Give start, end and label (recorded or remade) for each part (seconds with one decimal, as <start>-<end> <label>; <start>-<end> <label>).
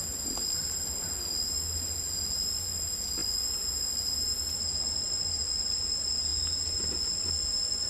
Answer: 0.0-7.9 recorded